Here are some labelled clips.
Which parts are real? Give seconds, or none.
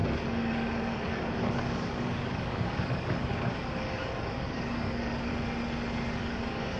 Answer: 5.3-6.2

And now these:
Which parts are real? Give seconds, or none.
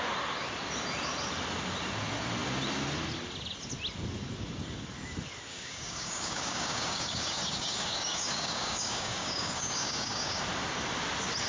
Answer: 0.0-5.5; 10.4-11.5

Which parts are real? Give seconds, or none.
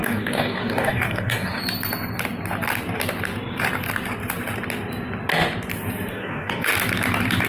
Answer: 1.6-6.1; 6.7-7.5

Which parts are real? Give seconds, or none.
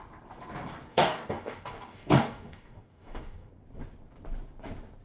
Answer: 0.0-0.9; 3.5-5.0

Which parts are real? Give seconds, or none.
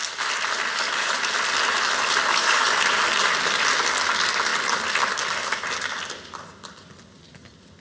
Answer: 0.0-0.7; 1.3-2.3; 2.8-7.8